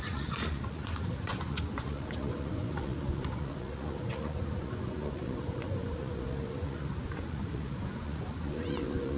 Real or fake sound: fake